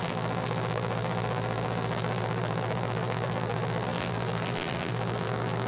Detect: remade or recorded remade